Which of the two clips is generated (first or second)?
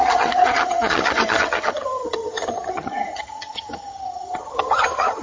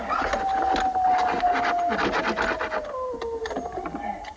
first